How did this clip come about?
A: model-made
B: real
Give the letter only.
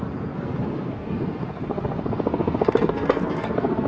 A